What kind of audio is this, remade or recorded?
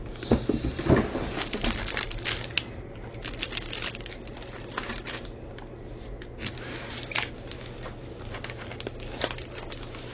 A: recorded